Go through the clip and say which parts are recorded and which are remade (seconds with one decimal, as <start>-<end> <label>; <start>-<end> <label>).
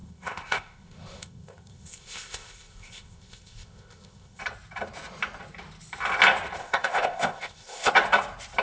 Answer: 0.0-4.4 remade; 4.4-6.6 recorded; 6.6-7.9 remade; 7.9-8.6 recorded